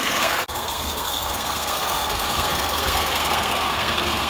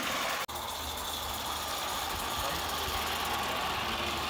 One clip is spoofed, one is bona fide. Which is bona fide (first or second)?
second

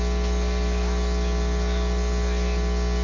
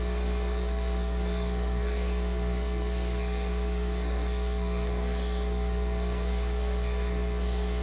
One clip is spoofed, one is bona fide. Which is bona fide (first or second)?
first